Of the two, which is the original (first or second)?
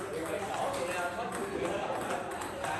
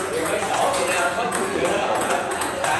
first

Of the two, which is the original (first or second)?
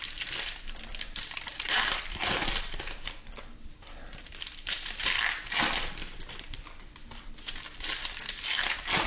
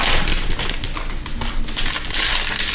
second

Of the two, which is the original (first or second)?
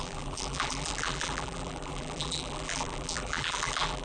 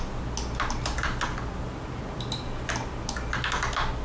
second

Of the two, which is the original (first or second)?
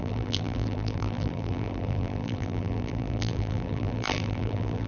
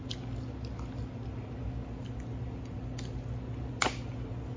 second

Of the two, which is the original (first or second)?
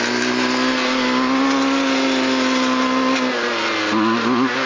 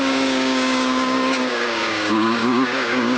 first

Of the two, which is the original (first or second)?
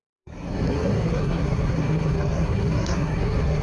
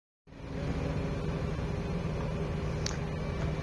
second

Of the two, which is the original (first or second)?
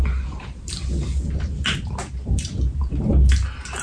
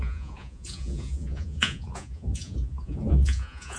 first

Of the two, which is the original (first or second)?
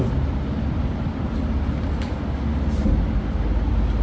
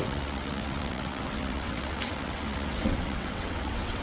first